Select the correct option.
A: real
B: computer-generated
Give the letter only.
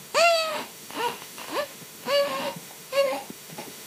B